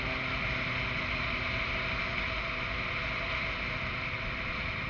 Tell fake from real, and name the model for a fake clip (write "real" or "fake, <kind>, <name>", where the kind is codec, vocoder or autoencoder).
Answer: real